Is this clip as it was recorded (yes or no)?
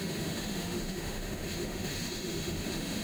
no